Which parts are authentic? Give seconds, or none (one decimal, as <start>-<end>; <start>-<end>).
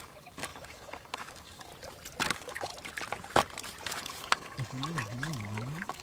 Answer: 1.7-2.3; 2.7-4.0